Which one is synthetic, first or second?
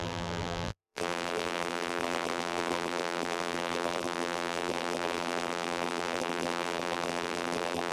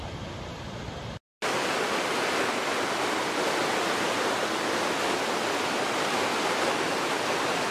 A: first